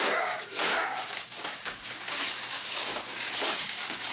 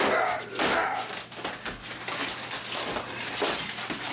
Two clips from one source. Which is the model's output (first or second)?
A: first